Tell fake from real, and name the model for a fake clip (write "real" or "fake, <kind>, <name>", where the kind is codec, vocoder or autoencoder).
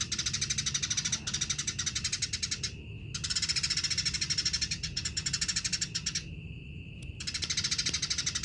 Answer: real